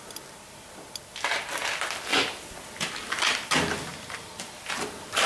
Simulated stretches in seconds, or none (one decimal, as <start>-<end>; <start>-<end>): 2.1-3.5; 3.9-4.5

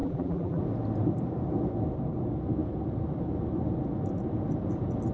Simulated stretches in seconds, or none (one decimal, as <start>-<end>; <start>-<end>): 0.0-0.6